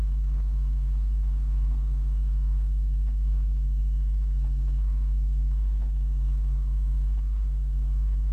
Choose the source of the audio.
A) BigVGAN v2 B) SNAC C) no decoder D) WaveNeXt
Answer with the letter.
B